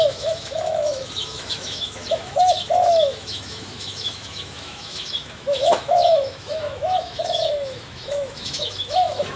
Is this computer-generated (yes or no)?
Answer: yes